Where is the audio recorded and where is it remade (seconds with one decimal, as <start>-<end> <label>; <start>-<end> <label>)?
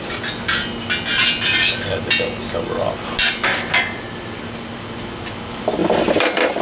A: 0.0-6.6 recorded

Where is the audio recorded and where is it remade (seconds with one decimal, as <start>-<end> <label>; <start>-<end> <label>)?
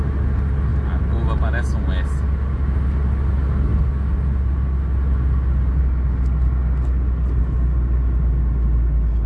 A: 0.0-9.3 recorded